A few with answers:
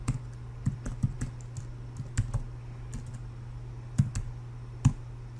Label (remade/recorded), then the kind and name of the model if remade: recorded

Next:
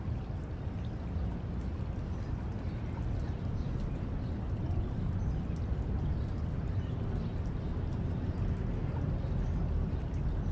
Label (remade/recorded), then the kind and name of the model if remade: recorded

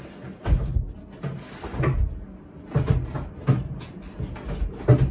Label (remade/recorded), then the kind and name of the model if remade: recorded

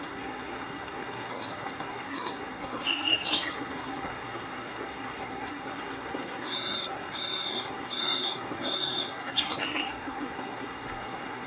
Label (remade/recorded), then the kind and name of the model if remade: remade, codec, SNAC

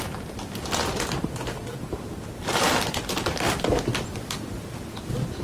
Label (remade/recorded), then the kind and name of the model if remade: recorded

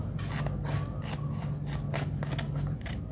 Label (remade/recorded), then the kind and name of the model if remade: recorded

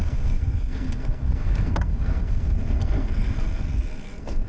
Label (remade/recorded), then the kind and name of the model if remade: remade, codec, SNAC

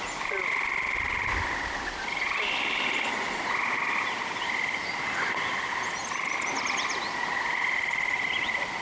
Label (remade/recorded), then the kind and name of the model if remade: recorded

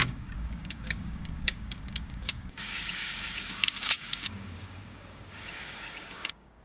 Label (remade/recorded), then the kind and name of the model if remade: remade, codec, DAC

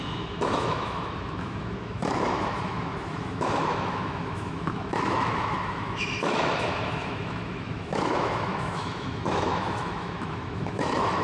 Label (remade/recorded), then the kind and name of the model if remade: remade, autoencoder, DAC-VAE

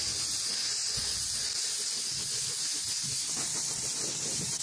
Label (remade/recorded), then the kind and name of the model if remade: recorded